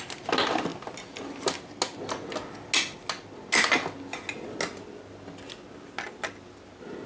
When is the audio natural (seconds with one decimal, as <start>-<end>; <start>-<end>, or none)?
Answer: 0.0-7.1